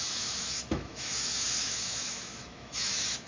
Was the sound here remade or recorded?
remade